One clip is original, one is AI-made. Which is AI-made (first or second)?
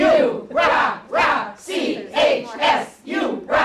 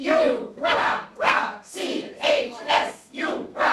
second